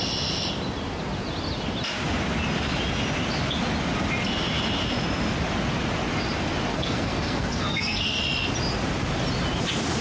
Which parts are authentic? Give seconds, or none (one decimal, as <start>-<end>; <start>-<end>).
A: 0.0-6.7; 8.2-10.0